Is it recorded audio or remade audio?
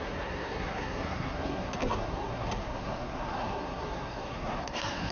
remade